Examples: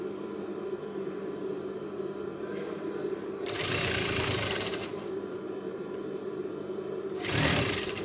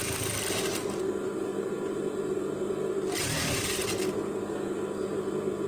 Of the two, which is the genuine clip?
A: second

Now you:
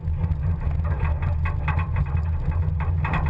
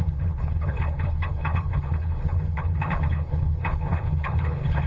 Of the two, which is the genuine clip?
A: first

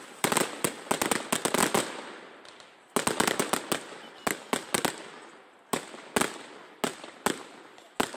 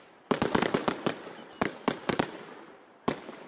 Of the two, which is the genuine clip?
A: first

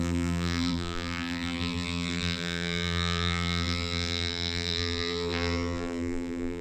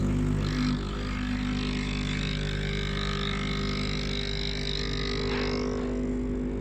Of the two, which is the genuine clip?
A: second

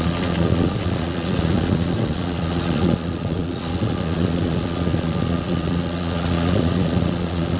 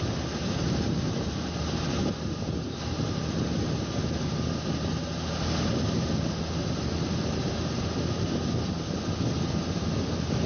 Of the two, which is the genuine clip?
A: second